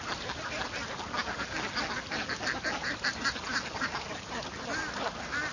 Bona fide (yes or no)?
yes